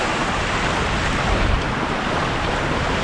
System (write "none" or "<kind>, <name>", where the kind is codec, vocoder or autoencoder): none